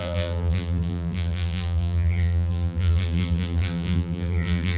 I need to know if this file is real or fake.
fake